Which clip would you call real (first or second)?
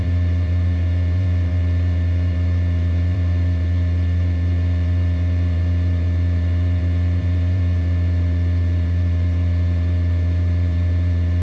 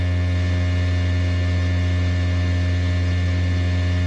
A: second